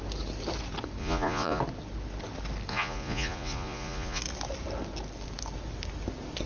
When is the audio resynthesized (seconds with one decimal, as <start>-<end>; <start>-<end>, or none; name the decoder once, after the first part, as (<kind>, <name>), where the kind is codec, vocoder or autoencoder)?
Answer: 1.0-1.6 (vocoder, Vocos); 2.7-4.2